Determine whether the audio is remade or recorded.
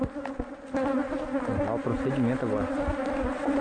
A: recorded